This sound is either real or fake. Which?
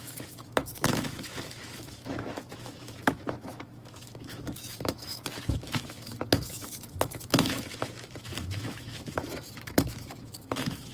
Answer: fake